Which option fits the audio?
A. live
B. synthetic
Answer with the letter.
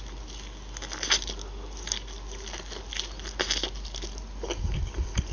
A